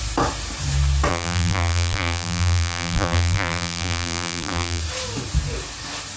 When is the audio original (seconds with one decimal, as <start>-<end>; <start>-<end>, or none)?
0.0-1.1; 4.8-6.2